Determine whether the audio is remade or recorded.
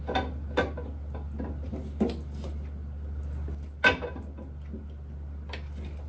recorded